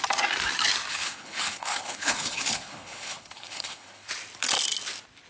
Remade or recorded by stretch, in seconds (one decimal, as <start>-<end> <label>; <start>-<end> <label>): 0.0-0.9 recorded; 0.9-4.1 remade; 4.1-5.3 recorded